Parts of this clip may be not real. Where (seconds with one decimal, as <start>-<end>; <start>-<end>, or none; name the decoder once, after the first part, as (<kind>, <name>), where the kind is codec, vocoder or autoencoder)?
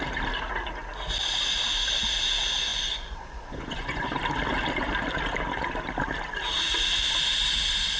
2.7-4.2 (vocoder, Vocos)